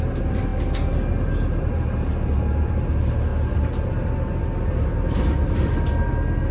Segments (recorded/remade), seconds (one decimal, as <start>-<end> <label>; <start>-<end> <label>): 0.0-6.5 recorded